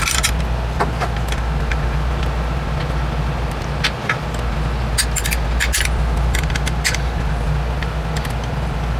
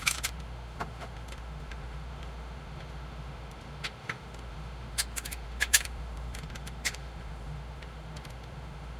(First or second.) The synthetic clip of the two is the second